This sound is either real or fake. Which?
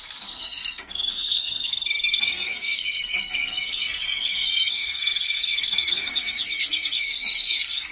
fake